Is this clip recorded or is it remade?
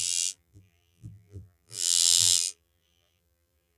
remade